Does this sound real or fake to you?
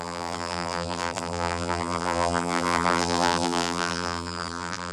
fake